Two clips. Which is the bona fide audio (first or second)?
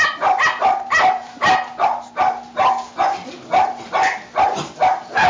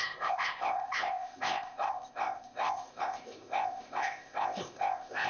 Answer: first